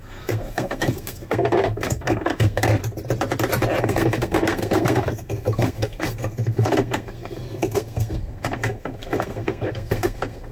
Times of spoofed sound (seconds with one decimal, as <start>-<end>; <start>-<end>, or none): 0.0-2.8; 3.8-10.5

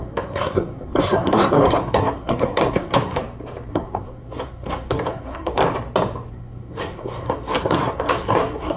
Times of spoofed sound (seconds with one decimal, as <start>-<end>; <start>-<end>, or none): 0.0-3.2; 3.7-5.6; 6.3-8.8

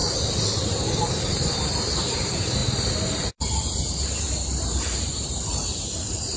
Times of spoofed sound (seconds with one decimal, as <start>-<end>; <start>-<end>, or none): 1.1-6.4